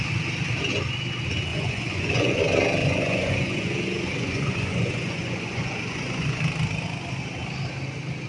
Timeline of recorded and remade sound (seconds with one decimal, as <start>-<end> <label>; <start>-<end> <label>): 0.0-1.5 recorded; 1.5-2.4 remade; 2.4-2.8 recorded; 2.8-6.4 remade; 6.4-8.3 recorded